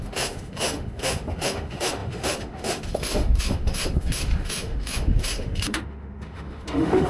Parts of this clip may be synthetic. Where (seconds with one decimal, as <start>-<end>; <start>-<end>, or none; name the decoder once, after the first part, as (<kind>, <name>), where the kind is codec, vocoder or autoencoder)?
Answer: 0.0-7.1 (autoencoder, DAC-VAE)